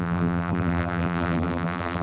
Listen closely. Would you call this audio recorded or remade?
remade